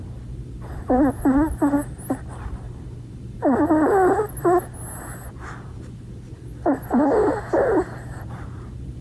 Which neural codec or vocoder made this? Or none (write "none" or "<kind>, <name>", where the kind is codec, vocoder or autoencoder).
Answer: none